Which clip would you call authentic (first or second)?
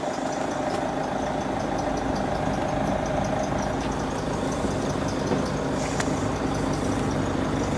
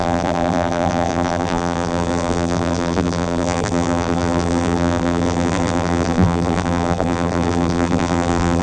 first